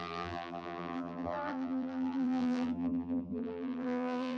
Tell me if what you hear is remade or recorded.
remade